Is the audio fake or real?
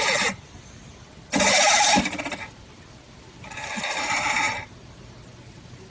real